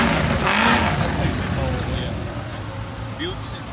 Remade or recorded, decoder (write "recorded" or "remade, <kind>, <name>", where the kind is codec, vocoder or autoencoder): recorded